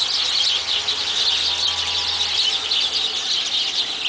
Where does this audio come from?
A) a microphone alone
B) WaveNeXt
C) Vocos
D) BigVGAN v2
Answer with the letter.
A